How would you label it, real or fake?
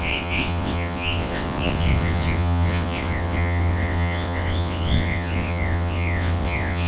fake